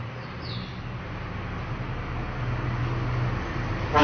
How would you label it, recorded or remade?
recorded